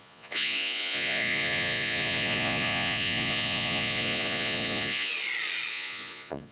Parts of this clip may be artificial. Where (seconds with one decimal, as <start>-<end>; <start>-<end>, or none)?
0.0-5.1; 5.7-6.5